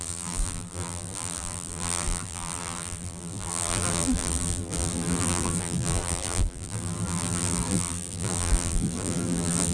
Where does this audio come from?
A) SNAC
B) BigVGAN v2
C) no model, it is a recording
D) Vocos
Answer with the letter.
B